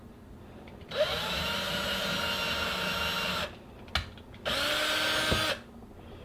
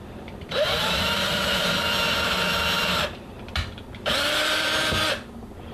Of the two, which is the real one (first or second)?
first